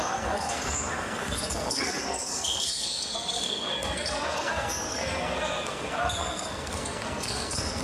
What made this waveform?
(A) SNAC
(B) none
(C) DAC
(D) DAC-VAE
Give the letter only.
A